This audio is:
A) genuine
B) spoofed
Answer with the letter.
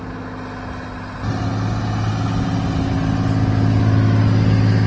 A